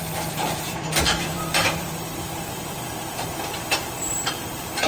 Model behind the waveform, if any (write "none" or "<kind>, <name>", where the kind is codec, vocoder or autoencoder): vocoder, BigVGAN v2